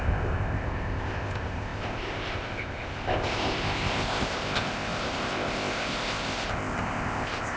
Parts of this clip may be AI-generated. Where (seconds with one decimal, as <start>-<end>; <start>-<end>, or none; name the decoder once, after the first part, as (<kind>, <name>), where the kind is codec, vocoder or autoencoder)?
0.0-7.6 (codec, ZipCodec)